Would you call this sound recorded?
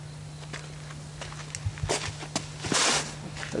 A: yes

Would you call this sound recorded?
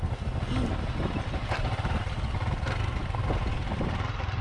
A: yes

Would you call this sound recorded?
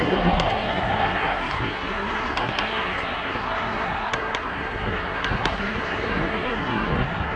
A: no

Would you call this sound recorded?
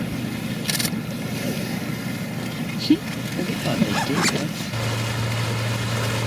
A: yes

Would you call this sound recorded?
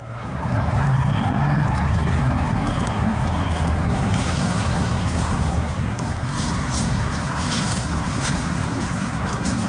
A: no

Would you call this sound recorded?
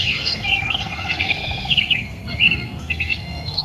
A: no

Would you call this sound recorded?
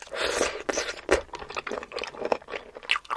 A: yes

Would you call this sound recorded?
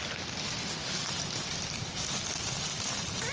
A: yes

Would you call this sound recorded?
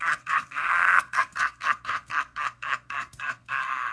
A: no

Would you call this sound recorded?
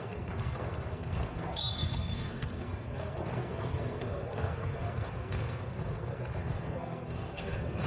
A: no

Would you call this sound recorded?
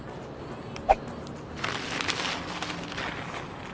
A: yes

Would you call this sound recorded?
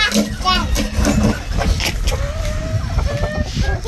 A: yes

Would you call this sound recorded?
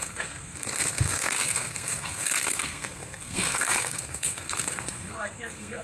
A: no